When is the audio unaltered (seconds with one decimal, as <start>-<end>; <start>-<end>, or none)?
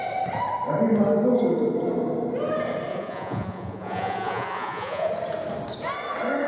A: 0.0-2.9; 5.1-6.5